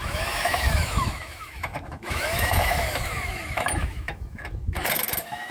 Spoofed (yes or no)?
yes